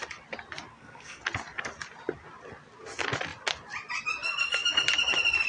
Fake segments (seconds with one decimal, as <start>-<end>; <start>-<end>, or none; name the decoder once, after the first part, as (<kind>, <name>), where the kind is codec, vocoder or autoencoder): 0.7-1.2 (codec, SNAC)